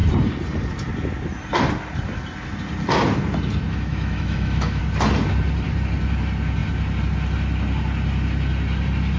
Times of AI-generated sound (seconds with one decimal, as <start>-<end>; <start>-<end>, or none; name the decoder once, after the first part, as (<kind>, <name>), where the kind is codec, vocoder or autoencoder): 3.7-4.8 (autoencoder, DAC-VAE)